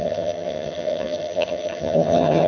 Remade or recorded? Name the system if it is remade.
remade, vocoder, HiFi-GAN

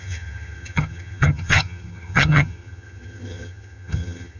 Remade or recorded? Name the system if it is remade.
remade, vocoder, HiFi-GAN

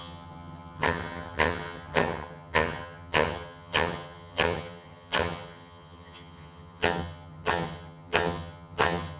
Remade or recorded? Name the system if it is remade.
remade, vocoder, HiFi-GAN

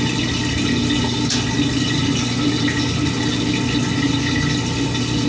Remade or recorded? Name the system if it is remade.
recorded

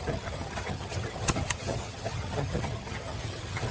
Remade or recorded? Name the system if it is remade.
remade, vocoder, HiFi-GAN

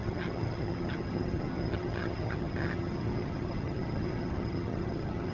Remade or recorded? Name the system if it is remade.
remade, vocoder, HiFi-GAN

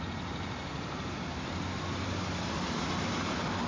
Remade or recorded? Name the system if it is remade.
recorded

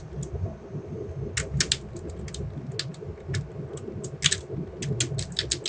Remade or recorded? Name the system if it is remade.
recorded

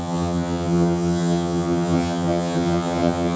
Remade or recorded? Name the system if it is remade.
remade, vocoder, HiFi-GAN